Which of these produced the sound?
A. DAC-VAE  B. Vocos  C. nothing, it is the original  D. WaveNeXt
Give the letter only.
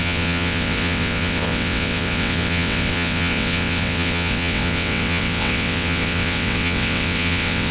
D